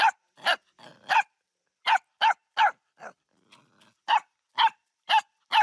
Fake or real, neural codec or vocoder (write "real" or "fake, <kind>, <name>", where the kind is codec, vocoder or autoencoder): real